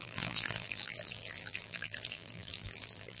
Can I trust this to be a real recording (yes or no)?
no